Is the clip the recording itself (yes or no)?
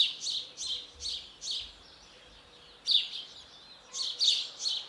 yes